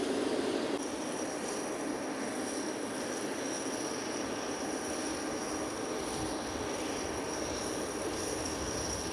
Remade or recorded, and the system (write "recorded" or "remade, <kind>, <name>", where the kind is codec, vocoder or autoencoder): recorded